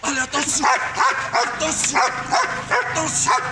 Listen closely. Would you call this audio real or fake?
real